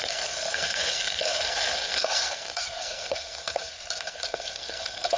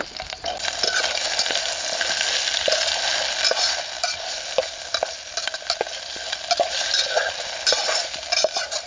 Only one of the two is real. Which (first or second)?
second